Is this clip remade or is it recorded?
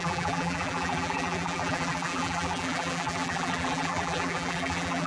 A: remade